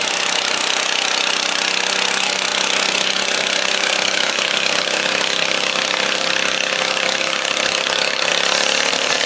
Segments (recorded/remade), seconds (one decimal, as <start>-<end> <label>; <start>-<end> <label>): 0.0-0.6 remade; 0.6-2.1 recorded; 2.1-8.3 remade; 8.3-8.9 recorded; 8.9-9.3 remade

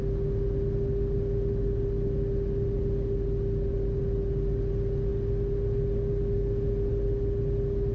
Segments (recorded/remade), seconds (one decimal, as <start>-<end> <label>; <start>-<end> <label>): 0.0-7.9 recorded

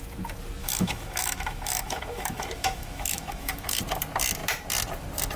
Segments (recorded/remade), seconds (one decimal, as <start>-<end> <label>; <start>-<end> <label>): 0.0-0.6 recorded; 0.6-3.8 remade; 3.8-5.4 recorded

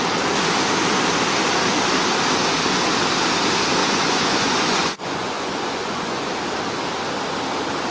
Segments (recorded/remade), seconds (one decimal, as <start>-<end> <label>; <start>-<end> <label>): 0.0-3.8 recorded; 3.8-6.3 remade; 6.3-7.9 recorded

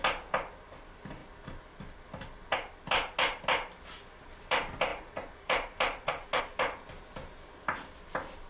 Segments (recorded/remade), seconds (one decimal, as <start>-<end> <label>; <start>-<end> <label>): 0.0-8.5 recorded